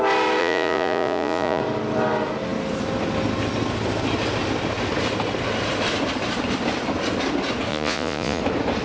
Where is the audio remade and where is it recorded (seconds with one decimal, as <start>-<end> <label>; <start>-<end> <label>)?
0.0-0.4 recorded; 0.4-1.6 remade; 1.6-7.7 recorded; 7.7-8.4 remade; 8.4-8.8 recorded